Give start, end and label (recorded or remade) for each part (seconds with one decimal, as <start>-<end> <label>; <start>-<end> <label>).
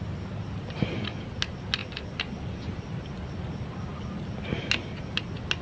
0.0-5.6 recorded